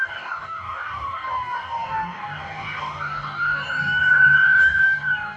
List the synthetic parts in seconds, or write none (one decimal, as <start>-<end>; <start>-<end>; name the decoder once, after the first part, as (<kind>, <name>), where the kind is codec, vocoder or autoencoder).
0.0-5.4 (codec, DAC)

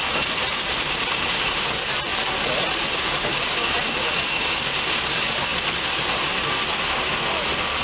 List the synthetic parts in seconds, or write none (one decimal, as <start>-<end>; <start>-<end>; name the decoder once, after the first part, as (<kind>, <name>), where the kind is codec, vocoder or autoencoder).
none

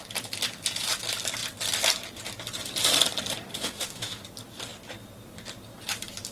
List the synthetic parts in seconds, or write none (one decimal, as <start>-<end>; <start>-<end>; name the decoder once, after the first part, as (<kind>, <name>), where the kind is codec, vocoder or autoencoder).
3.5-4.2 (autoencoder, DAC-VAE)